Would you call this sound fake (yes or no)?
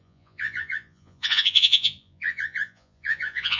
yes